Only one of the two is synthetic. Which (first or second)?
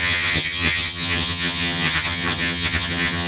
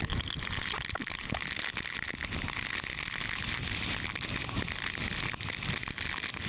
first